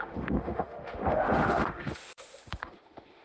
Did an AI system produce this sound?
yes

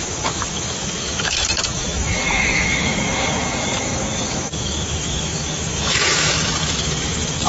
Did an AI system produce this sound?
yes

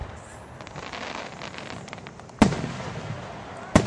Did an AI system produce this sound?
no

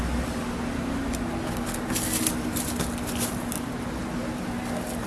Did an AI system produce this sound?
no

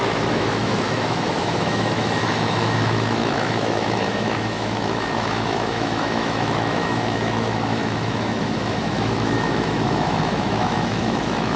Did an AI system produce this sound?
yes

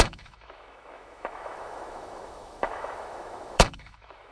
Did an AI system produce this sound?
yes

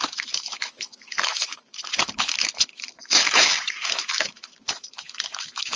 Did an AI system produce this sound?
yes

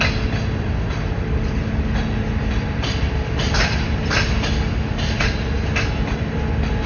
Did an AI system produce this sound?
no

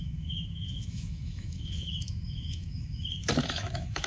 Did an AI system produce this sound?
yes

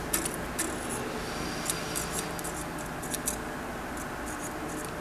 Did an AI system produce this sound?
no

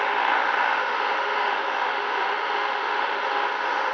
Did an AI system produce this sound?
yes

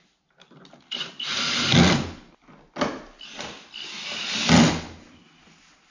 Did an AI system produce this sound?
no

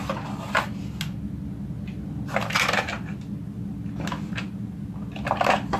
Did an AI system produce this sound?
no